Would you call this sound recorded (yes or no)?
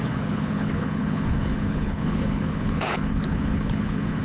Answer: no